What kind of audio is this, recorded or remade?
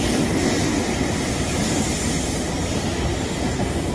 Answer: recorded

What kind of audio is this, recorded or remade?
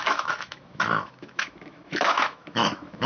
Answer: remade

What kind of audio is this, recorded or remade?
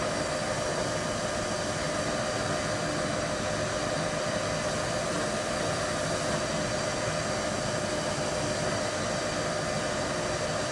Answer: recorded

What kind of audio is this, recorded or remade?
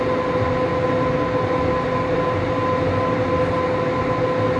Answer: recorded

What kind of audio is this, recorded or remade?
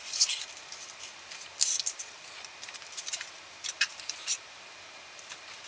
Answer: recorded